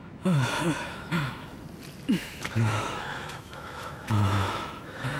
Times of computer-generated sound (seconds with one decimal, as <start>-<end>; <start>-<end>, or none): 0.0-1.5; 2.1-5.2